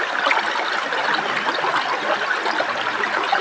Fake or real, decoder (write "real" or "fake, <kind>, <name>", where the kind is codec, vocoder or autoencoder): real